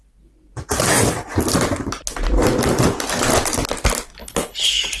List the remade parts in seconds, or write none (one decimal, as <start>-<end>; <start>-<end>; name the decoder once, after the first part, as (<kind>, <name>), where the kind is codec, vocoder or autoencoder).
4.2-5.0 (codec, HILCodec)